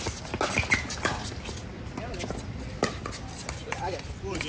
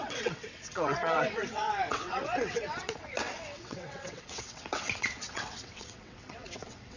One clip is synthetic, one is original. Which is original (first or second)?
first